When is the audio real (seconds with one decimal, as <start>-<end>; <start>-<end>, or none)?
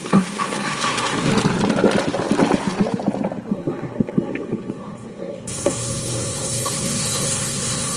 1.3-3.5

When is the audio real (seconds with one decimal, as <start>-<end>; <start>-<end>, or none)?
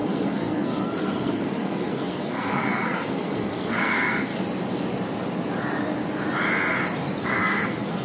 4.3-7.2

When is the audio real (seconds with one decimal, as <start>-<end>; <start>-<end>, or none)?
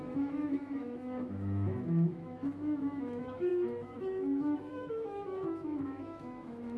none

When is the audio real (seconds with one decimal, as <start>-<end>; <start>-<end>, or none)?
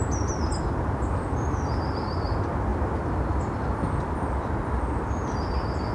1.5-2.7; 5.2-5.9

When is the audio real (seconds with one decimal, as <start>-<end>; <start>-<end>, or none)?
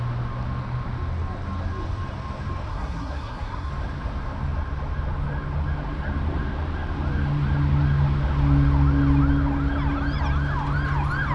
0.0-2.7; 3.7-11.3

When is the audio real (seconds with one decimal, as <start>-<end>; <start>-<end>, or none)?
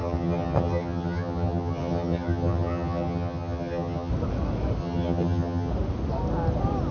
4.1-4.8; 5.7-6.9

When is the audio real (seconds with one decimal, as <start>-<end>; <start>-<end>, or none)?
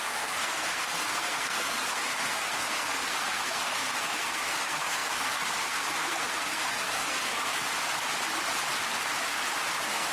7.5-9.7